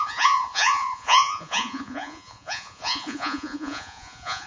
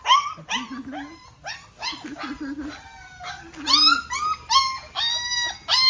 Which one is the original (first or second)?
second